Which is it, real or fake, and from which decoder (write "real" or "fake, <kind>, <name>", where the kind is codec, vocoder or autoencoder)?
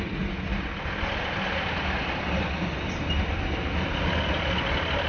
real